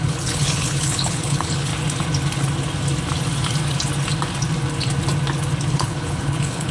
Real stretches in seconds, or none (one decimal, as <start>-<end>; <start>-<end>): 1.7-5.7